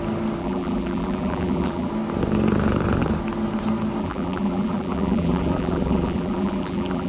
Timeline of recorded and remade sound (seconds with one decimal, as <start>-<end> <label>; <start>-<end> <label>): 0.0-0.4 recorded; 0.4-1.9 remade; 1.9-4.0 recorded; 4.0-7.1 remade